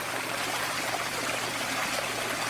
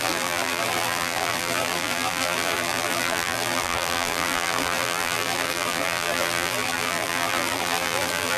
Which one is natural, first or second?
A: first